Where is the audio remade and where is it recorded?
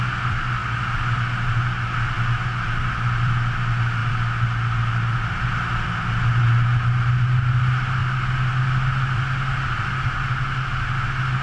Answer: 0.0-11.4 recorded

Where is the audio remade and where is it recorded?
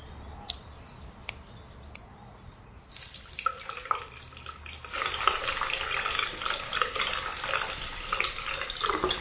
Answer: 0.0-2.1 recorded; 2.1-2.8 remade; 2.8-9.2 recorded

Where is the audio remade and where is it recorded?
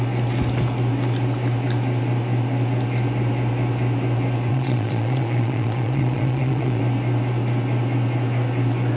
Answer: 0.0-4.5 recorded; 4.5-6.8 remade; 6.8-9.0 recorded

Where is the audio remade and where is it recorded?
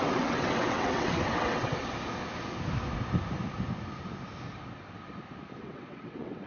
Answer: 0.0-1.7 remade; 1.7-5.6 recorded; 5.6-6.5 remade